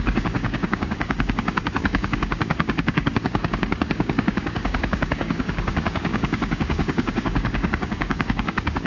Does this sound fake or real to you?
fake